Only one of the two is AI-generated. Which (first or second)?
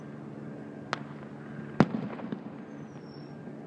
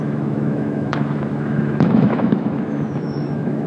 second